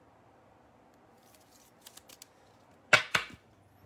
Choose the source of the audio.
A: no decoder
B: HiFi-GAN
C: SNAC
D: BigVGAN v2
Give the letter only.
A